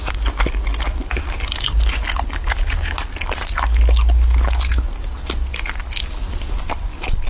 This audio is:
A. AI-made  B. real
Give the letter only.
B